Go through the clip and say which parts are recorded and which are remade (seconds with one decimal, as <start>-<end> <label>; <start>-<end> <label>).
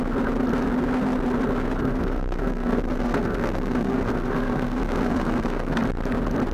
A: 0.0-1.9 recorded; 1.9-5.8 remade; 5.8-6.5 recorded